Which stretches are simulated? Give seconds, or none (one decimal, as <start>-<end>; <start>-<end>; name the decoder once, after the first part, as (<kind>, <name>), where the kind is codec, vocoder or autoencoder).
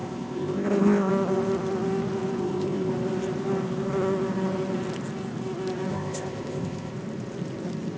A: 0.0-1.1 (codec, ZipCodec); 2.4-2.9; 5.9-6.9